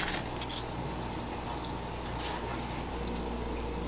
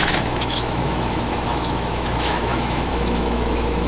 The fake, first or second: second